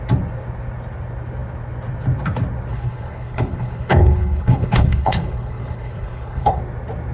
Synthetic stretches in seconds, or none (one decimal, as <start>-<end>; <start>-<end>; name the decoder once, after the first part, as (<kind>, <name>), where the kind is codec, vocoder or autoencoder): 2.7-6.6 (codec, HILCodec)